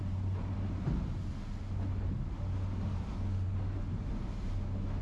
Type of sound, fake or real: real